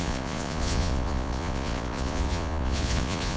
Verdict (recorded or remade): remade